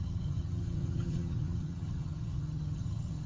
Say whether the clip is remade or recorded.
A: remade